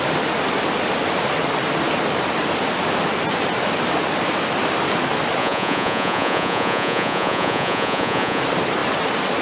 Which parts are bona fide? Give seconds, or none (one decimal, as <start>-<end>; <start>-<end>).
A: 0.0-5.4; 8.4-9.4